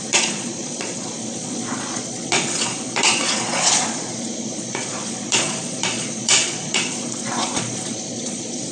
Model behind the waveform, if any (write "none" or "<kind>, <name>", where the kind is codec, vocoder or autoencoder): vocoder, Vocos